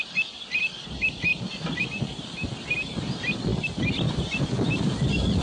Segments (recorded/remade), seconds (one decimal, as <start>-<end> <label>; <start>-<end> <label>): 0.0-5.4 recorded